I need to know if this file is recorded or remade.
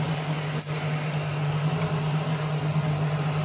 recorded